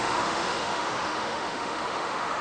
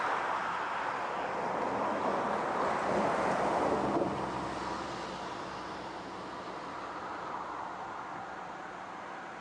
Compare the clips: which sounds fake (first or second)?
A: first